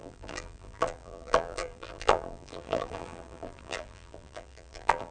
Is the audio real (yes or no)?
no